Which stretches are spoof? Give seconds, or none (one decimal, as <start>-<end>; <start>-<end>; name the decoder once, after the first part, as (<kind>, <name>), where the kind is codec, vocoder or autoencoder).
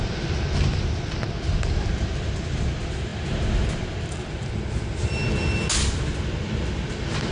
none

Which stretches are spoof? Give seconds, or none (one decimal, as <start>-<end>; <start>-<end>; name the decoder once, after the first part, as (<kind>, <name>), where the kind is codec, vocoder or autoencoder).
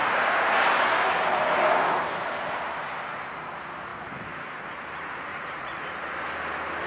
5.3-5.8 (vocoder, Vocos)